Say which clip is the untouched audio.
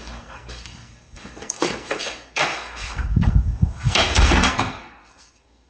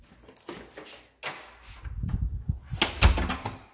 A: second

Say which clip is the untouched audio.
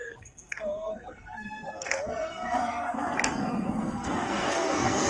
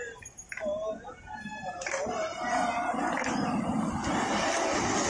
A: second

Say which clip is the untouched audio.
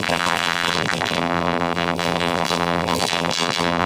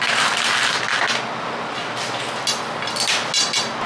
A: second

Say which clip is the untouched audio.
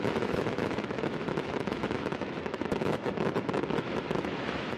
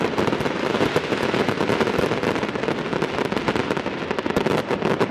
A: second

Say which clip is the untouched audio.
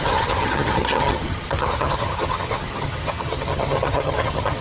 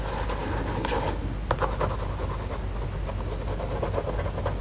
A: second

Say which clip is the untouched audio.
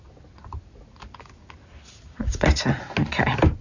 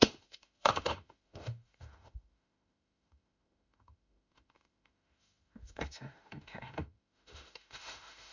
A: first